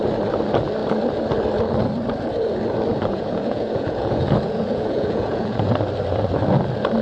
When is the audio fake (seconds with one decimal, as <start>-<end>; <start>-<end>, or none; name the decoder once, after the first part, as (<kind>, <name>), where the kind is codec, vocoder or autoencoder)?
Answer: 2.9-5.7 (vocoder, Vocos)